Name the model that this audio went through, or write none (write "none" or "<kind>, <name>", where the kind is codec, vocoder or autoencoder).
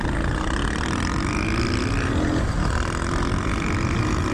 none